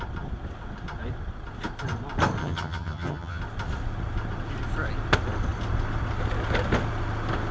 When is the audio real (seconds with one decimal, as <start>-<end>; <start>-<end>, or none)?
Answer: 0.0-2.4; 3.4-7.5

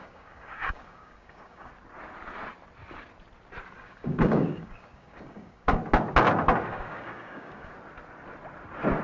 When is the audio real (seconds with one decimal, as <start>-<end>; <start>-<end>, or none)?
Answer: 1.7-3.8; 5.8-6.7; 7.7-9.0